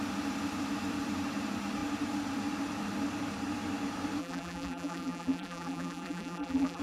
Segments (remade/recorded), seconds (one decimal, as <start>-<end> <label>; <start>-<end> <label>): 0.0-4.2 recorded; 4.2-6.8 remade